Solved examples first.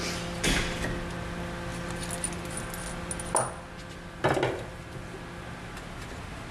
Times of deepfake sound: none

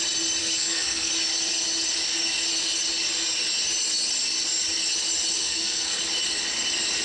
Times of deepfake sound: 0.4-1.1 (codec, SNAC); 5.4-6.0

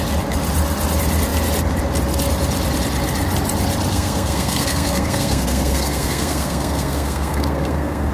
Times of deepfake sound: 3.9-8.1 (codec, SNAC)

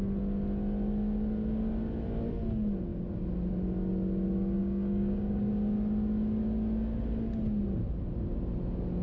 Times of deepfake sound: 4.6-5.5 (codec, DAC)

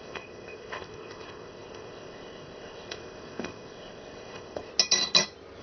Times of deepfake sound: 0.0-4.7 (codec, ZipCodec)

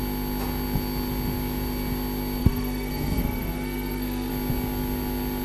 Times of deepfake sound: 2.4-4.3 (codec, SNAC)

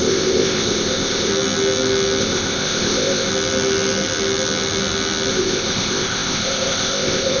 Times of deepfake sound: 0.0-1.3 (codec, ZipCodec); 2.2-3.3; 5.3-7.4

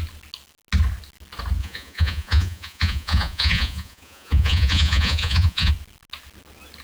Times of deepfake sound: 1.6-5.7 (vocoder, Vocos)